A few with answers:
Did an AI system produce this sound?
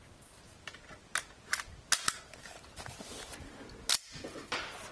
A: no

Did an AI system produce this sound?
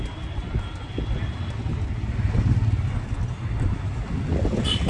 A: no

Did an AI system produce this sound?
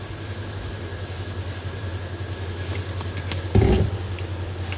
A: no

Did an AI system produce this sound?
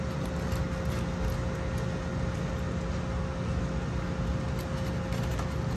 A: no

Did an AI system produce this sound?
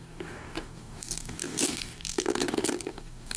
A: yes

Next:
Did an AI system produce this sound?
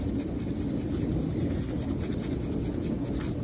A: no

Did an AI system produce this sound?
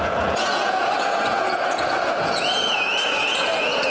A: yes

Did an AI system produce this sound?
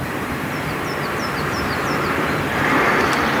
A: yes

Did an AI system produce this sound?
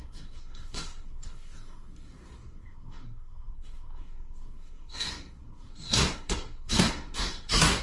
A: yes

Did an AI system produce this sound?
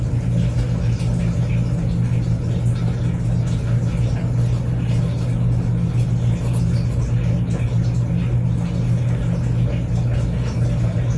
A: no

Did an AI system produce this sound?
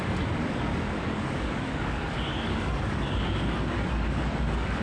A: yes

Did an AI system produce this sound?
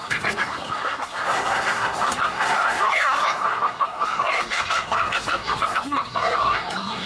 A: yes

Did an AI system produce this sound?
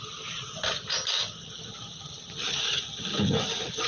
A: no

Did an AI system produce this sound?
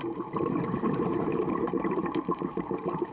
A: yes